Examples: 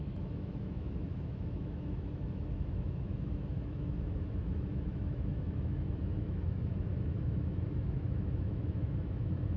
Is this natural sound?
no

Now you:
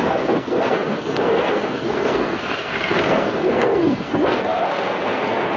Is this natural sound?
no